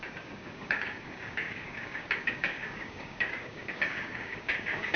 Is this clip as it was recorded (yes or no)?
no